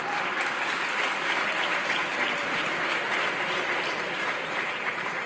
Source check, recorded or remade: recorded